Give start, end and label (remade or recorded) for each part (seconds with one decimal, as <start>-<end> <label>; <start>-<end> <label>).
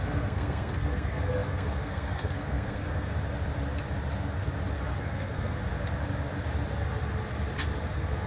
0.0-3.1 remade; 3.1-4.8 recorded; 4.8-5.6 remade; 5.6-7.9 recorded; 7.9-8.3 remade